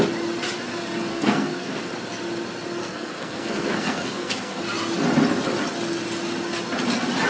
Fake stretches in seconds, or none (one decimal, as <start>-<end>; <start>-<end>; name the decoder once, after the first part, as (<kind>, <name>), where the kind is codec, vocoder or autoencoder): 1.1-1.8 (codec, SNAC); 2.8-4.6